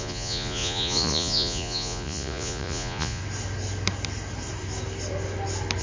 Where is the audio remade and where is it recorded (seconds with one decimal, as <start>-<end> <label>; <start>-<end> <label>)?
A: 0.0-3.2 remade; 3.2-5.8 recorded